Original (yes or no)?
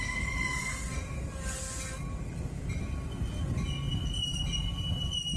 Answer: yes